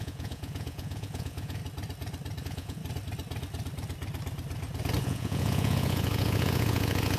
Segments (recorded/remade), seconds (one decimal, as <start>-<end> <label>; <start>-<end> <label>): 0.0-1.6 remade; 1.6-2.4 recorded; 2.4-2.8 remade; 2.8-5.0 recorded; 5.0-7.2 remade